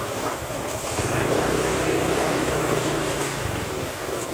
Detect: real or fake fake